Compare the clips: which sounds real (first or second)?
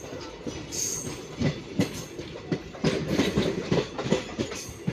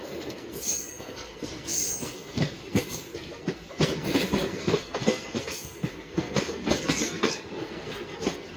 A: first